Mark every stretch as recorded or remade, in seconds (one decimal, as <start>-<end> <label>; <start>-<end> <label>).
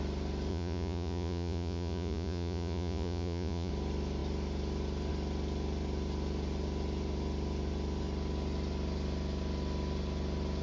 0.0-0.5 recorded; 0.5-3.7 remade; 3.7-10.6 recorded